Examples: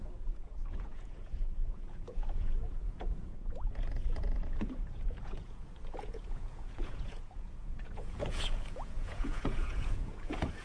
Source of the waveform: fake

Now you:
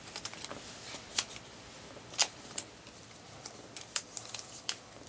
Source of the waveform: fake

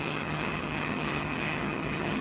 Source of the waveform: fake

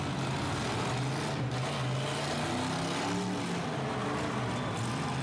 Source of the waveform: real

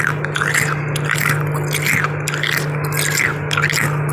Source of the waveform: real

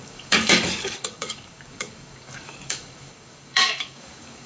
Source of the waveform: fake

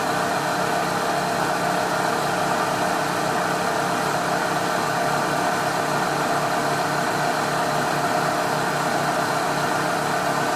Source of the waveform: real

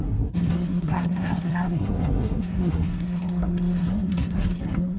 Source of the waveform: fake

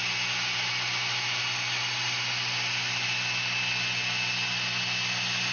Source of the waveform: real